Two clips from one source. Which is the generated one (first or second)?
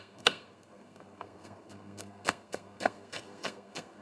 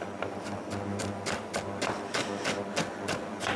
first